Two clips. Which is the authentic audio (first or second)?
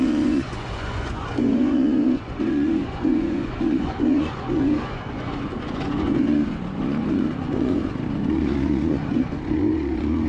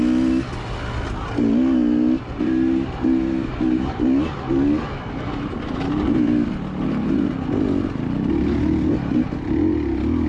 second